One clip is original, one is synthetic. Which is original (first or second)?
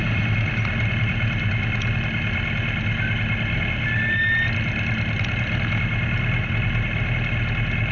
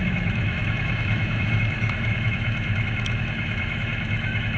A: first